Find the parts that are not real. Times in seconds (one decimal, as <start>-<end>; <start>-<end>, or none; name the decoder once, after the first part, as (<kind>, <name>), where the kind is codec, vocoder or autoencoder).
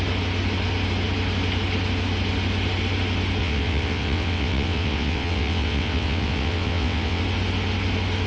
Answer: 3.4-7.2 (vocoder, WaveNeXt)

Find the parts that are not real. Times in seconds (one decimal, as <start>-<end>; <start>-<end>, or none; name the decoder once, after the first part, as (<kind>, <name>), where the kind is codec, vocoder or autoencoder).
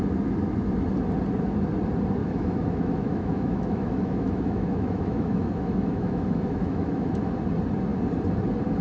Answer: 2.2-7.3 (autoencoder, DAC-VAE)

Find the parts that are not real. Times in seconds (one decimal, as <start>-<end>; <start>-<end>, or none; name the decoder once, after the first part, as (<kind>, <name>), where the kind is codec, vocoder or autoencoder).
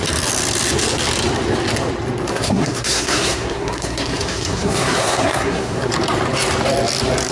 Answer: 2.3-5.9 (codec, SNAC)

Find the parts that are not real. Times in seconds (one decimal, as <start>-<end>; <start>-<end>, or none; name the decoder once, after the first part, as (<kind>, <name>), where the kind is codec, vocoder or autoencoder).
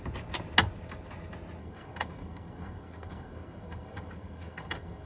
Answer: 1.6-5.1 (codec, SNAC)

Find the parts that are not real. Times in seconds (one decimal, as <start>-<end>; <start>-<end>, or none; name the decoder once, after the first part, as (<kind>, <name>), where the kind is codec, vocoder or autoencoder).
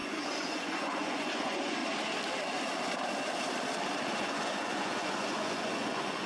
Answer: 0.0-1.8 (vocoder, Vocos); 4.2-6.3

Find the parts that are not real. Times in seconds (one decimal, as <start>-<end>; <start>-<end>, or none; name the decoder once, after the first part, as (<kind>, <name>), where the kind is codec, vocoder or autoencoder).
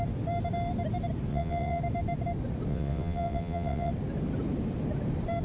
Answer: 1.3-1.8 (vocoder, WaveNeXt); 2.7-3.9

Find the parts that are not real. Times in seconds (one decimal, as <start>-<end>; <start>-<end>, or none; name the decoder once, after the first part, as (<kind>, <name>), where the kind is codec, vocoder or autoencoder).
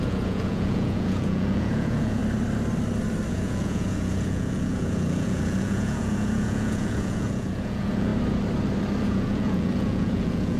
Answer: 0.0-2.2 (vocoder, Vocos); 3.3-8.1; 9.0-10.6